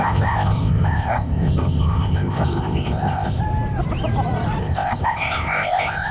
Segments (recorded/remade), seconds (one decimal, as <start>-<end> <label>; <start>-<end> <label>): 0.0-3.4 remade; 3.4-4.6 recorded; 4.6-6.1 remade